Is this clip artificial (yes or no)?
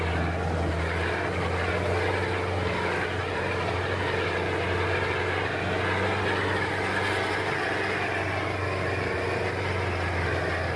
no